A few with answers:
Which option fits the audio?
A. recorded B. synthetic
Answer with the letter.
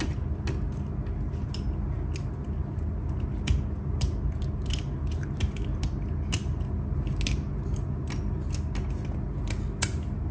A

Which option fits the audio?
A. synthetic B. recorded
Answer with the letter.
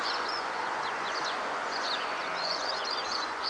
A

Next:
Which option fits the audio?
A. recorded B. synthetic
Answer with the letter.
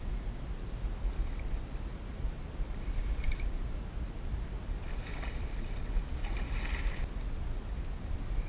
A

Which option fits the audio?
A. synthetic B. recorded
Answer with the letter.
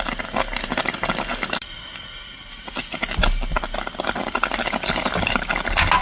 B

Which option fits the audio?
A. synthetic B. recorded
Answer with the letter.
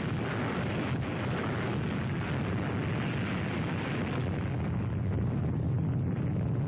B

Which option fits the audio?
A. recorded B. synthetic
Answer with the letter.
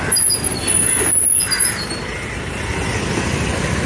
A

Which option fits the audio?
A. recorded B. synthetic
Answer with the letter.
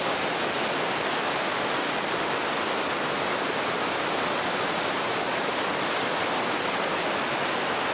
A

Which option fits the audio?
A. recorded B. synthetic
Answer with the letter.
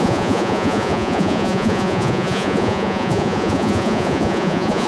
B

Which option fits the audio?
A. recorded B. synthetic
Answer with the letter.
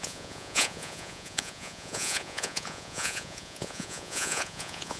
B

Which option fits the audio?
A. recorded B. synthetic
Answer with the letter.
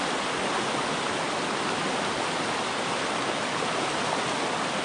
A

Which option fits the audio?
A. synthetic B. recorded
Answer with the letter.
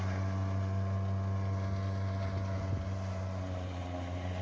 B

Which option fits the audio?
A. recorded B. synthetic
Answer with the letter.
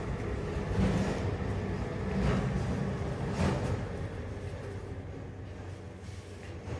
A